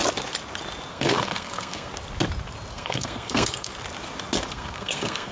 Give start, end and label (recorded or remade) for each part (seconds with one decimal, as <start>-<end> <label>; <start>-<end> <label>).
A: 0.0-0.9 recorded; 0.9-1.9 remade; 1.9-2.7 recorded; 2.7-3.7 remade; 3.7-4.5 recorded; 4.5-5.3 remade